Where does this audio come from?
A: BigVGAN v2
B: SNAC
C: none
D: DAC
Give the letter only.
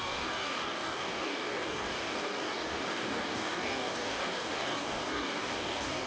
D